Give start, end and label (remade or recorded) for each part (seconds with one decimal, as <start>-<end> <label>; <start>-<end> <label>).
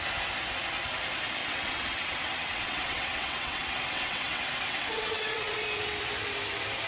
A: 0.0-1.4 recorded; 1.4-5.5 remade; 5.5-6.9 recorded